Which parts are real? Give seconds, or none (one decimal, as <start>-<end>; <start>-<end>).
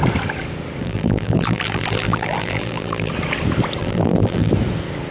0.0-0.8; 3.1-3.8; 4.5-5.1